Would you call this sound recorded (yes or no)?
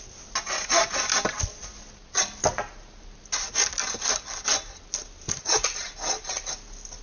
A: yes